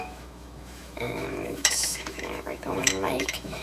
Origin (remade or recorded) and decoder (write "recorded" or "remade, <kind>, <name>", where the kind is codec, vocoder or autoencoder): remade, autoencoder, DAC-VAE